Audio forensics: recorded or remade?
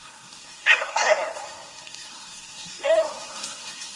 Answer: remade